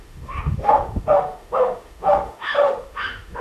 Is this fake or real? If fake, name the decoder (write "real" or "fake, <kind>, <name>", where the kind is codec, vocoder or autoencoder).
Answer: fake, autoencoder, DAC-VAE